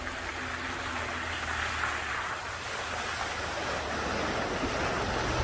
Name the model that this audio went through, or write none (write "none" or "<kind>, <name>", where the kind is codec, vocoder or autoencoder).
none